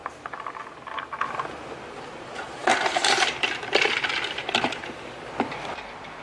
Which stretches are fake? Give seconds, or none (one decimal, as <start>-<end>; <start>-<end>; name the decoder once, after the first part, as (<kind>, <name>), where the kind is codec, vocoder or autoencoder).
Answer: 0.0-0.6 (vocoder, BigVGAN v2); 2.6-4.0; 4.4-5.3